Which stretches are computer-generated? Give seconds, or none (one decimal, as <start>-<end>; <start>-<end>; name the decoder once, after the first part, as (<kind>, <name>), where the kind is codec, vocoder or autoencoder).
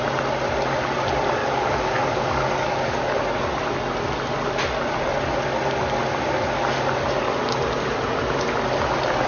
1.4-3.2 (codec, DAC)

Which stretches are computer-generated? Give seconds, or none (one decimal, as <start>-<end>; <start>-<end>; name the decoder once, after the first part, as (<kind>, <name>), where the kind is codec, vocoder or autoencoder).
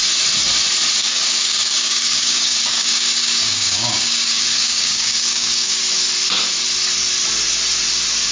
1.0-5.8 (codec, DAC)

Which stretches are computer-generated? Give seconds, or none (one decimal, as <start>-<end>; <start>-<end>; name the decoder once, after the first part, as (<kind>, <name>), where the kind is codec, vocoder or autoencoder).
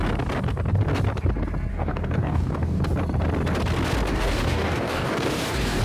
1.7-2.8 (codec, DAC); 4.1-5.8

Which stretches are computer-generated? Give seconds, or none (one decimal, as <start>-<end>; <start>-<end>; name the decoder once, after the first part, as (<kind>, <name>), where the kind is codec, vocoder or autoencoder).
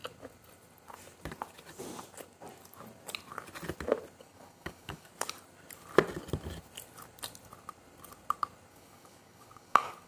4.2-5.1 (codec, DAC); 8.7-10.1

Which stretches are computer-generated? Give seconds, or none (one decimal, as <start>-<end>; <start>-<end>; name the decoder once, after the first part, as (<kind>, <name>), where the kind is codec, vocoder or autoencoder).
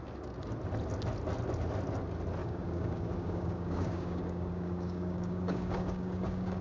2.4-6.6 (codec, DAC)